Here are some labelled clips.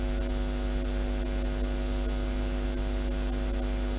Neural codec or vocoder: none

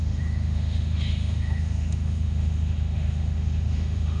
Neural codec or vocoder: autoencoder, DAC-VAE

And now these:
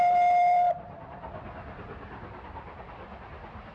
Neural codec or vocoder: none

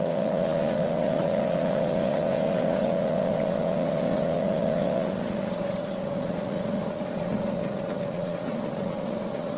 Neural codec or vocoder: vocoder, Vocos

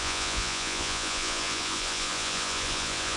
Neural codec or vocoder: vocoder, Vocos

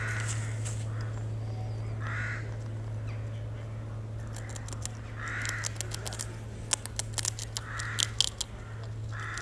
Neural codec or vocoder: none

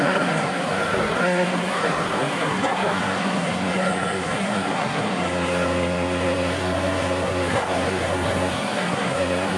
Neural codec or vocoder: codec, SNAC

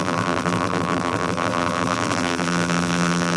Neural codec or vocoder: vocoder, BigVGAN v2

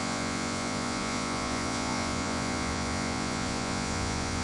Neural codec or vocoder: vocoder, Vocos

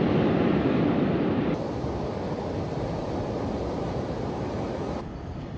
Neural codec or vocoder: none